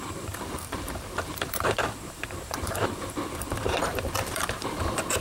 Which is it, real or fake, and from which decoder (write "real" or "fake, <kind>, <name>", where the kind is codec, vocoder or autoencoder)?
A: fake, vocoder, BigVGAN v2